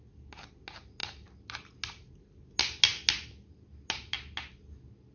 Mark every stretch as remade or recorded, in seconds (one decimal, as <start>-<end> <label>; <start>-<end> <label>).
0.0-5.1 recorded